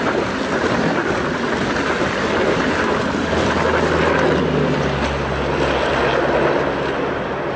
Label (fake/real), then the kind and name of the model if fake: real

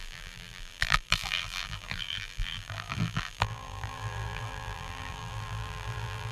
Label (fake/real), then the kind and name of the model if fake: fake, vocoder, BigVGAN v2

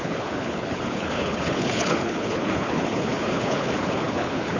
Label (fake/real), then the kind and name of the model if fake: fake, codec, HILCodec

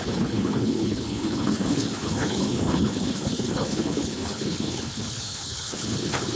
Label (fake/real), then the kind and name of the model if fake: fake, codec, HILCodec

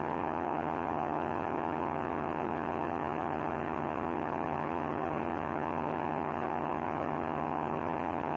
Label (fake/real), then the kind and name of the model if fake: fake, vocoder, HiFi-GAN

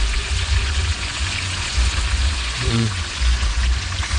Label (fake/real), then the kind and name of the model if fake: fake, vocoder, Vocos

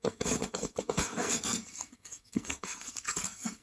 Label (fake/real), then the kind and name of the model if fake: fake, codec, SNAC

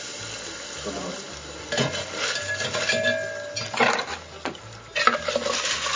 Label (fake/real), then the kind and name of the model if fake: real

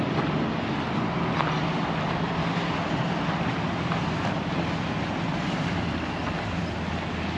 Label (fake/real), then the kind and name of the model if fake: real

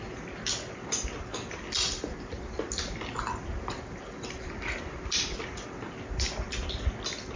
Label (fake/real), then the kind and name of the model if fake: real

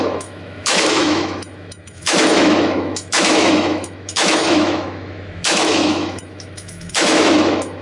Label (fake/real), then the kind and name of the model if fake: fake, autoencoder, DAC-VAE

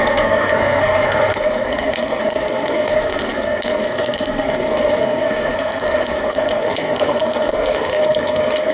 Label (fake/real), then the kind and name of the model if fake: fake, codec, SNAC